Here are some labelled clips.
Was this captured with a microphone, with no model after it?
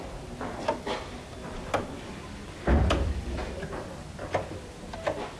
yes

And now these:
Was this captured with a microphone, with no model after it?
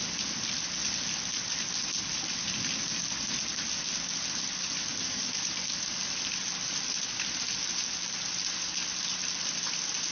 yes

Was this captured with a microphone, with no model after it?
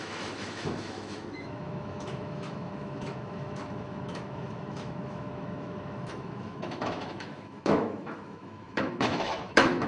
no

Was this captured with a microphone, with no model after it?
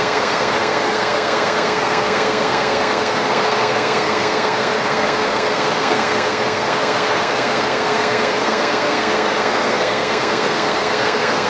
no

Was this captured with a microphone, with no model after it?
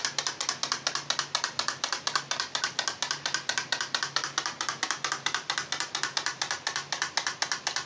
yes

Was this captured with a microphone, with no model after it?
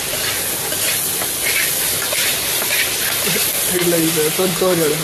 yes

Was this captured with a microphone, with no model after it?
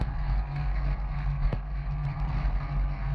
no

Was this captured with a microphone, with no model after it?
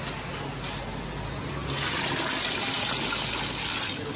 yes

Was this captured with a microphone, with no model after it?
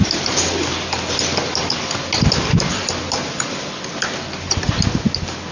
yes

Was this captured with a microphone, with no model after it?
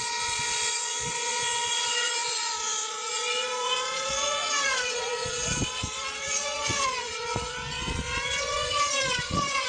no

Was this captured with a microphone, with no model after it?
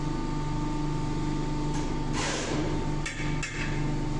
yes